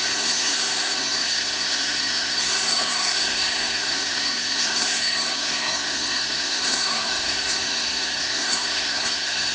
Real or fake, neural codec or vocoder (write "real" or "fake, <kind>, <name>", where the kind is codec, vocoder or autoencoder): fake, codec, SNAC